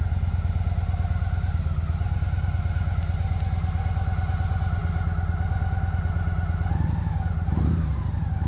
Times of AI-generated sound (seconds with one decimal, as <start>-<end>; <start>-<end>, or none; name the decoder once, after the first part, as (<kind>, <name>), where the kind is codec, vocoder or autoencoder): none